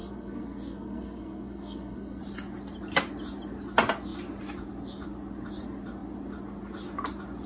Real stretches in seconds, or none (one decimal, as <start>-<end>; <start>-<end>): 2.2-7.5